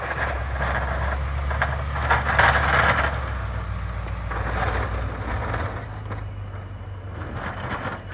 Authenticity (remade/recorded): recorded